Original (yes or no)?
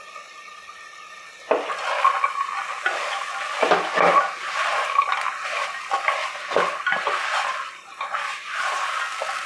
yes